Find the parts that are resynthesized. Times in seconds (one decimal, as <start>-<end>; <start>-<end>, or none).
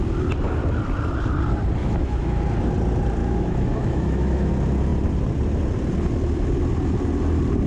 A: 1.8-2.4; 3.2-4.5